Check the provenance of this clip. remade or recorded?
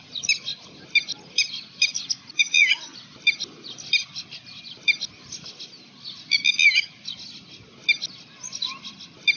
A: recorded